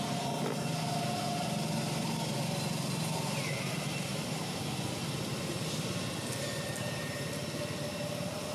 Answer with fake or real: real